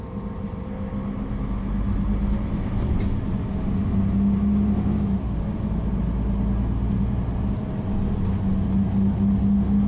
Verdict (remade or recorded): recorded